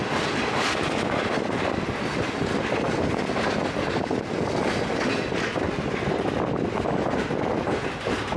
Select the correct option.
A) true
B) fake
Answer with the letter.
A